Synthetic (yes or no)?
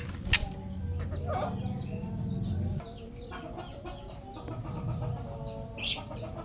no